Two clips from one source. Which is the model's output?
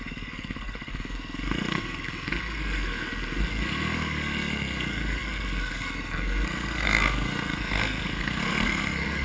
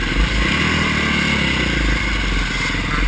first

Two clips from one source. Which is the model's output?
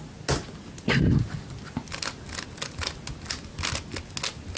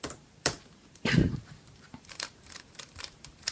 second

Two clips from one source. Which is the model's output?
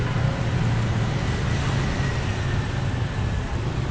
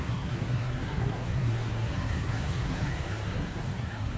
second